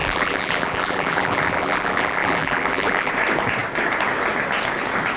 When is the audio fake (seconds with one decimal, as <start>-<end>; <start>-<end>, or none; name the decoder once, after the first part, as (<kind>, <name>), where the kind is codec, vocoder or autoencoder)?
0.0-3.1 (vocoder, BigVGAN v2)